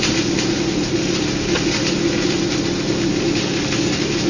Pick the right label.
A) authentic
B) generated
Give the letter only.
A